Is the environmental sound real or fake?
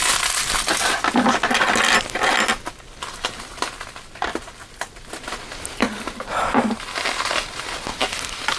real